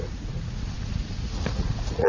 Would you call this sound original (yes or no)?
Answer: no